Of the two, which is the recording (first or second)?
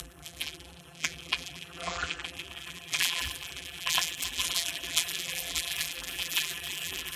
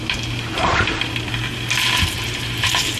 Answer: second